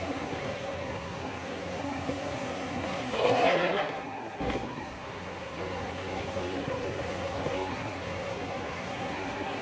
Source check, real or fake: fake